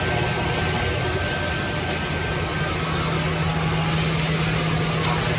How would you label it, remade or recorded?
recorded